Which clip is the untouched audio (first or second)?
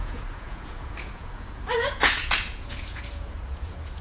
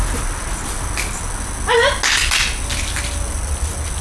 second